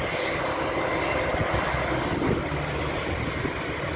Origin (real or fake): real